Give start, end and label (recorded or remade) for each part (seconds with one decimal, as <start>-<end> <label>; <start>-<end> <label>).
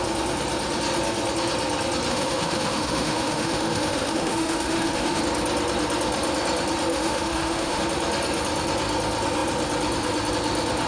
0.0-2.1 recorded; 2.1-5.2 remade; 5.2-6.9 recorded; 6.9-7.8 remade; 7.8-10.9 recorded